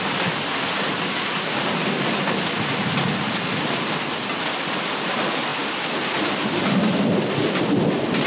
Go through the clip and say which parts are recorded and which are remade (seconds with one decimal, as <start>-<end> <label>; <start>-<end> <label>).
0.0-8.3 recorded